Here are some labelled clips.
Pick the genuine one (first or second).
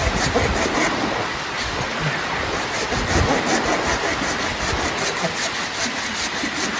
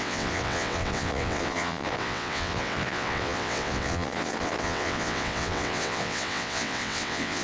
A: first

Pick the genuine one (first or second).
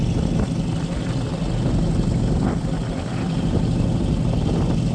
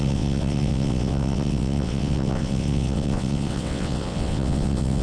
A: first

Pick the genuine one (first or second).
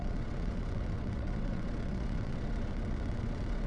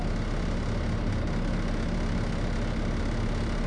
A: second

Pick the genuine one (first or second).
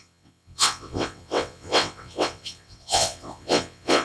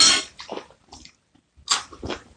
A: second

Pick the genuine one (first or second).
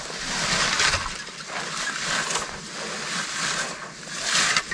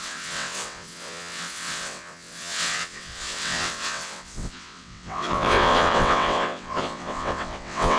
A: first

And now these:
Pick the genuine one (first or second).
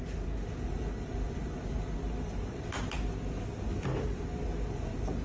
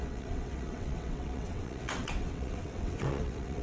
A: first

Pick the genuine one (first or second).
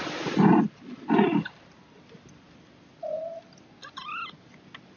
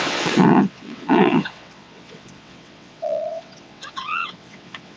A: first